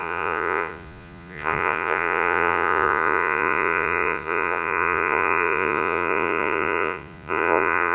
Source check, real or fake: fake